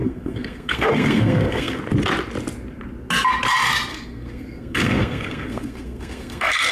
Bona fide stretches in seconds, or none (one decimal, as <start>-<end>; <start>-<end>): 1.8-3.9